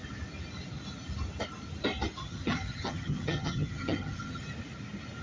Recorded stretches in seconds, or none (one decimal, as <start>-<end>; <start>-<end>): 0.0-2.2; 4.4-5.2